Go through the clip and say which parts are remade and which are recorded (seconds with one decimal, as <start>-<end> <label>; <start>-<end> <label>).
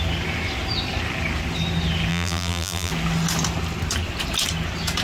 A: 0.0-2.1 recorded; 2.1-2.9 remade; 2.9-5.0 recorded